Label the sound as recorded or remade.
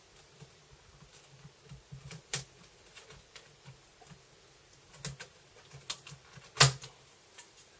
recorded